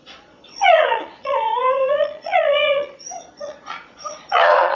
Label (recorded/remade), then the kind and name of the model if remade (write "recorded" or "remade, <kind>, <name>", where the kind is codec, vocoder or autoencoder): remade, vocoder, Vocos